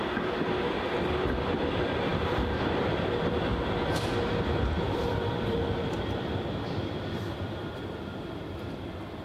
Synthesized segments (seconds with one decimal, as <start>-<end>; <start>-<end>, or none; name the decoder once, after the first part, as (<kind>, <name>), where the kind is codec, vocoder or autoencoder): 0.0-3.5 (vocoder, BigVGAN v2); 4.6-9.2